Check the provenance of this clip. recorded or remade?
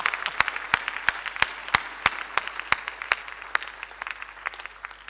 recorded